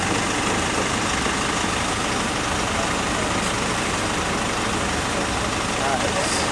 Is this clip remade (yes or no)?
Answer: no